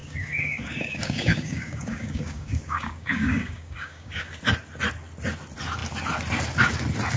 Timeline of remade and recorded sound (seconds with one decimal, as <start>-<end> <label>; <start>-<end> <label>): 0.0-4.3 remade; 4.3-7.2 recorded